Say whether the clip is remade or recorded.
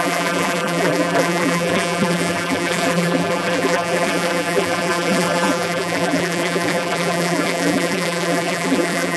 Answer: remade